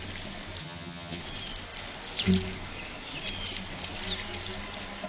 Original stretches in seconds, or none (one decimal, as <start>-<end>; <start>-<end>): 0.0-0.6; 1.2-5.1